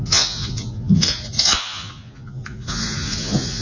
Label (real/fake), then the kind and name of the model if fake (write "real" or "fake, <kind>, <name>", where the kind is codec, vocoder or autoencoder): fake, vocoder, Vocos